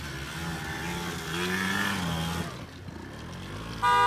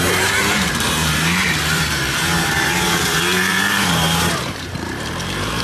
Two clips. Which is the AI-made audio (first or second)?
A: second